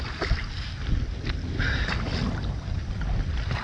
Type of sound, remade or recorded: recorded